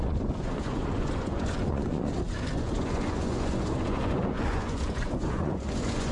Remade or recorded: remade